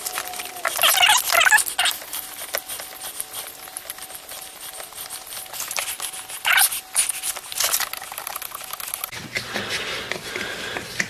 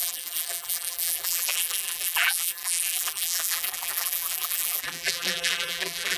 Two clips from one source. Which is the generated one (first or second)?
second